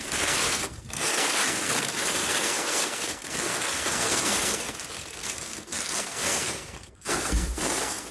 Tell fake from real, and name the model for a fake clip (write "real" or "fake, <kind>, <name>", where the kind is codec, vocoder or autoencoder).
fake, codec, SNAC